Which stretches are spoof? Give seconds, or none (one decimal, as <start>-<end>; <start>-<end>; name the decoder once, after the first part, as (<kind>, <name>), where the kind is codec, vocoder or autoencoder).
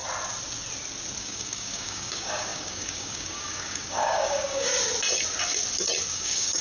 1.2-4.7 (codec, DAC); 6.1-6.6